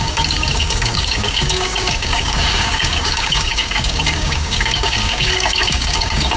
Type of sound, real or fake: fake